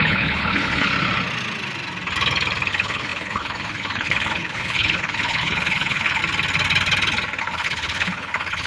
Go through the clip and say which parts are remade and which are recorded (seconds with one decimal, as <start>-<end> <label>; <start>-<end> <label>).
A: 0.0-0.9 remade; 0.9-2.7 recorded; 2.7-6.2 remade; 6.2-7.4 recorded; 7.4-8.7 remade

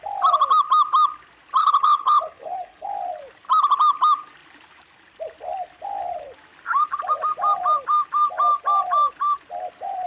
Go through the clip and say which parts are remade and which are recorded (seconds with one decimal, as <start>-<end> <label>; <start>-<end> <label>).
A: 0.0-1.6 recorded; 1.6-2.9 remade; 2.9-10.1 recorded

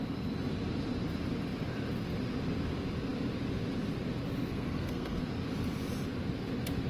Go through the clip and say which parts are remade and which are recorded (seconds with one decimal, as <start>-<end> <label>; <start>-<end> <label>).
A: 0.0-4.5 recorded; 4.5-5.2 remade; 5.2-6.9 recorded

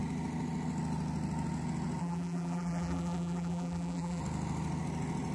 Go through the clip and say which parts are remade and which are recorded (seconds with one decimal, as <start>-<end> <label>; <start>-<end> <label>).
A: 0.0-2.0 recorded; 2.0-4.2 remade; 4.2-5.3 recorded

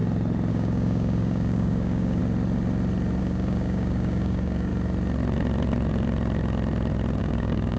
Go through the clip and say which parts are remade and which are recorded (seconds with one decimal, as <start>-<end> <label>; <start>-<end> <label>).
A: 0.0-0.5 recorded; 0.5-2.2 remade; 2.2-3.2 recorded; 3.2-4.7 remade; 4.7-7.2 recorded; 7.2-7.8 remade